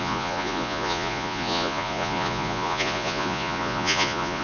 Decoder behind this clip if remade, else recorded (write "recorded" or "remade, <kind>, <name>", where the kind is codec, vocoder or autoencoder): remade, vocoder, Vocos